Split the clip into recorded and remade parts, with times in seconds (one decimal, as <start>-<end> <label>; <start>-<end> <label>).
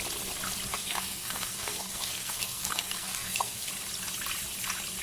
0.0-0.7 recorded; 0.7-3.7 remade; 3.7-5.0 recorded